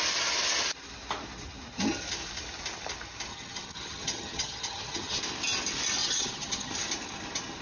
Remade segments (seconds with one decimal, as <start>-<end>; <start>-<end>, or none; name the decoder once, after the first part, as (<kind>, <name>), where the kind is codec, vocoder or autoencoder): 3.3-5.2 (vocoder, HiFi-GAN); 6.0-6.7

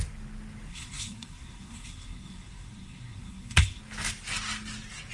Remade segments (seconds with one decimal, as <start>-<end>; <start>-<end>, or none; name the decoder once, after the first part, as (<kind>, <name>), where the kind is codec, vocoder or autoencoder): 0.7-3.8 (codec, SNAC)